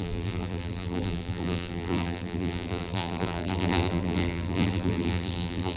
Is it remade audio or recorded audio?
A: remade